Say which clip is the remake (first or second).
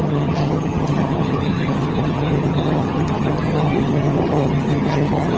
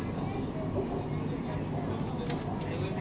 first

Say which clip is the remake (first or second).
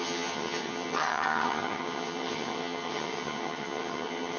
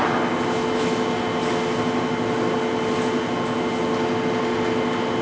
first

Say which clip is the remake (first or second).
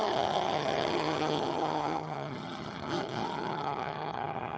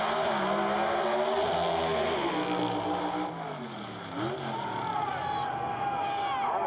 first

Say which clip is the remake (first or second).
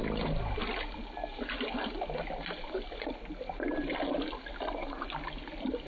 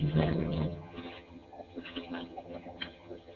second